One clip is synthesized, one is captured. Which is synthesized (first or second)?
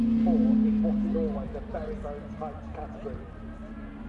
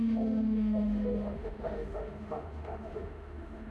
second